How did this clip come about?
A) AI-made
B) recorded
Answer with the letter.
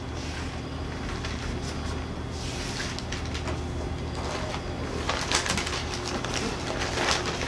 B